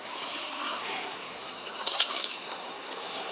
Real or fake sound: fake